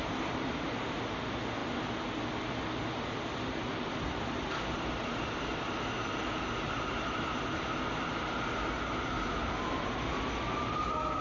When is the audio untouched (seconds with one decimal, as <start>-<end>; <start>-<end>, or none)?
0.0-11.2